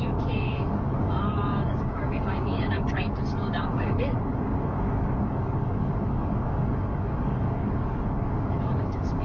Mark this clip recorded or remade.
remade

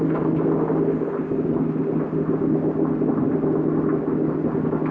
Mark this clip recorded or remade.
recorded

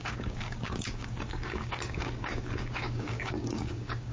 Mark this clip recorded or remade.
remade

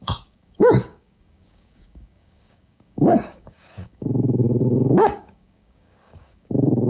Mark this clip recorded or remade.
remade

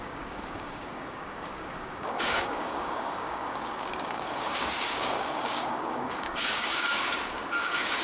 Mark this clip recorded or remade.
remade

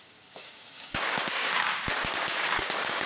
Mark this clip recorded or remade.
remade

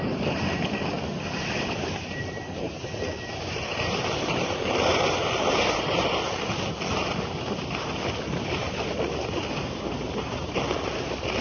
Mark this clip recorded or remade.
recorded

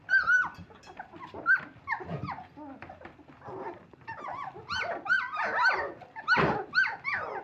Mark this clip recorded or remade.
recorded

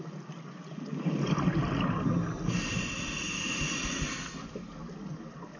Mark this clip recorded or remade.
recorded